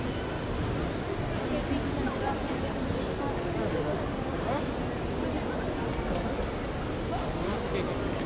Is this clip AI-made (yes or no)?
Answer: no